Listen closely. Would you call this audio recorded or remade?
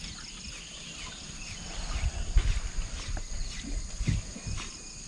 recorded